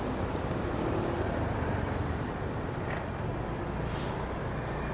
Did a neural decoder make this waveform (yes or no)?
no